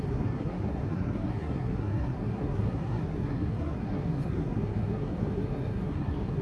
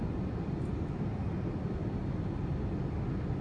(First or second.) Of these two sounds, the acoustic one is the second